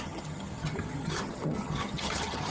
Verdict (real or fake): fake